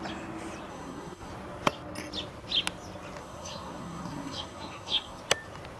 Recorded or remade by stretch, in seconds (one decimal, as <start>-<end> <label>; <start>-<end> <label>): 0.0-0.7 recorded; 0.7-1.3 remade; 1.3-3.2 recorded; 3.2-5.2 remade; 5.2-5.8 recorded